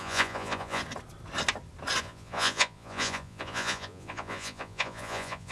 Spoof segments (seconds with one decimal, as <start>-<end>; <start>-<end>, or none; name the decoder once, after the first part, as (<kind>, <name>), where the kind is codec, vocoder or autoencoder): 0.0-0.8 (vocoder, Vocos); 2.0-5.5